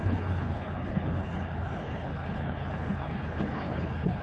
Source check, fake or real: fake